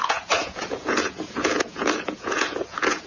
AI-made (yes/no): yes